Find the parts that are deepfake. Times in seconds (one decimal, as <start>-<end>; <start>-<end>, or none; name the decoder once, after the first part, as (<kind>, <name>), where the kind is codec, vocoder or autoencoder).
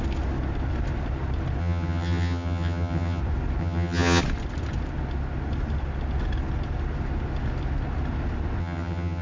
1.6-3.2 (vocoder, HiFi-GAN); 3.6-4.2; 8.6-9.2